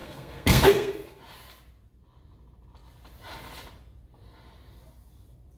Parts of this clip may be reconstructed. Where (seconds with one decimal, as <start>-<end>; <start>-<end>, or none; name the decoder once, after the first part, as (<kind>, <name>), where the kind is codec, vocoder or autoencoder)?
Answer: 0.0-1.2 (codec, SNAC)